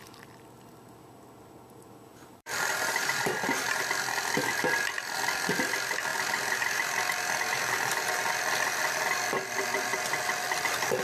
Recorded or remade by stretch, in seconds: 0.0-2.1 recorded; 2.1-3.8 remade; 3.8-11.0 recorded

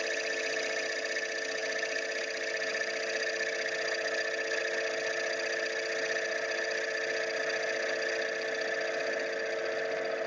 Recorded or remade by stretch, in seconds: 0.0-10.3 recorded

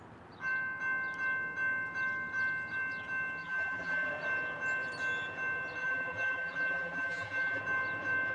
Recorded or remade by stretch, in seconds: 0.0-3.4 recorded; 3.4-4.1 remade; 4.1-5.8 recorded; 5.8-7.6 remade; 7.6-8.3 recorded

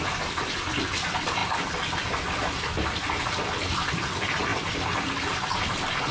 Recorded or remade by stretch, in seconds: 0.0-6.1 recorded

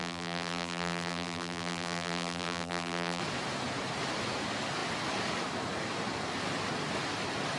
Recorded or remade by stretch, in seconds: 0.0-3.2 remade; 3.2-7.6 recorded